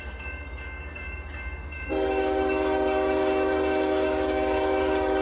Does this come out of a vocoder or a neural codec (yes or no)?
yes